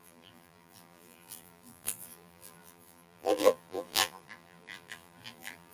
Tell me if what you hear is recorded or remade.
remade